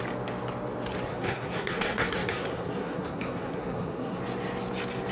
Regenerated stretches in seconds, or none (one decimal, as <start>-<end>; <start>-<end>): 1.1-4.2